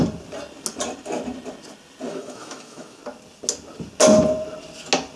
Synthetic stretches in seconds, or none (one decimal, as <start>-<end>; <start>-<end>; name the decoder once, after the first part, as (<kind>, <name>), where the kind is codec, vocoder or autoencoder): 2.1-3.0 (autoencoder, DAC-VAE)